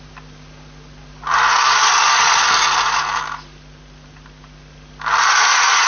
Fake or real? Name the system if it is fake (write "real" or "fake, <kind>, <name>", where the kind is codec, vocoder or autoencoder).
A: real